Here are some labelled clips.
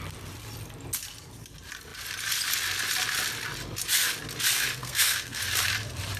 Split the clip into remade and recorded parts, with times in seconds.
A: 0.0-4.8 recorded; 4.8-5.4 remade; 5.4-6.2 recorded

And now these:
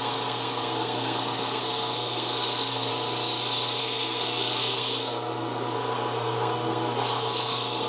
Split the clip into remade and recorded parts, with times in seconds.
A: 0.0-2.9 remade; 2.9-3.8 recorded; 3.8-7.9 remade

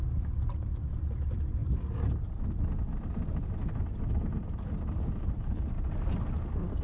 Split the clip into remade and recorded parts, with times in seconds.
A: 0.0-6.8 recorded

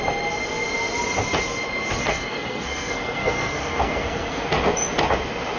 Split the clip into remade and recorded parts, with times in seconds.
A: 0.0-2.0 recorded; 2.0-4.5 remade; 4.5-5.6 recorded

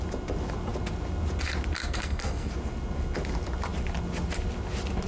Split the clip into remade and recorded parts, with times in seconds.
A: 0.0-1.8 recorded; 1.8-2.5 remade; 2.5-5.1 recorded

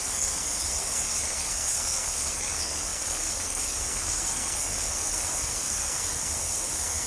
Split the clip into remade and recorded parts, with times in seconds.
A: 0.0-7.1 remade

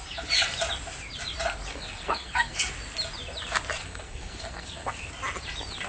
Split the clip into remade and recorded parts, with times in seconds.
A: 0.0-1.7 recorded; 1.7-2.7 remade; 2.7-3.8 recorded; 3.8-5.1 remade; 5.1-5.9 recorded